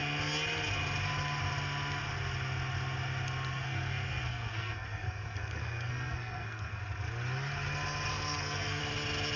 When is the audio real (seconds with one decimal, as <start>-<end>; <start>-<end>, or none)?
0.0-3.5; 6.8-8.1; 8.8-9.4